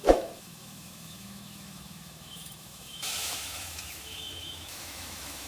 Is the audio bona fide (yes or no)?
no